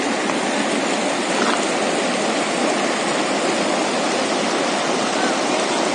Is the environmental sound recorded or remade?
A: recorded